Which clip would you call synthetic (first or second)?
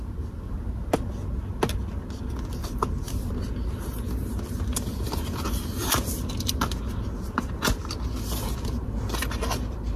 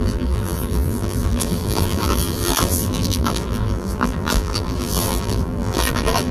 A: second